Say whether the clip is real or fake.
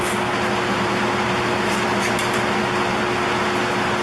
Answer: real